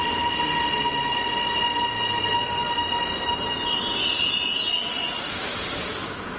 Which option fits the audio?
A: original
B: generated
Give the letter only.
A